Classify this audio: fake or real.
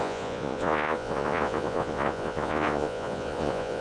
fake